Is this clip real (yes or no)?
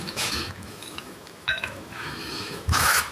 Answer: no